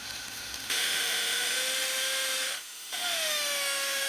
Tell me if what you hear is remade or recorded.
remade